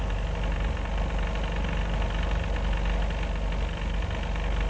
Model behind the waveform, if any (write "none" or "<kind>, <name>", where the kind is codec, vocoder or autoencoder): none